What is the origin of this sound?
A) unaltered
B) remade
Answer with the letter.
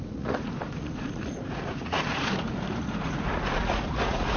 B